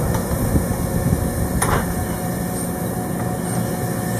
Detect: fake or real real